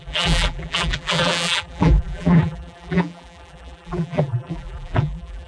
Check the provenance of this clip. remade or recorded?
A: remade